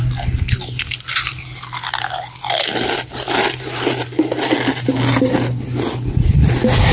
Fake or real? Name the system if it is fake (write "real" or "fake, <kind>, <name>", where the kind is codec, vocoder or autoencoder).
real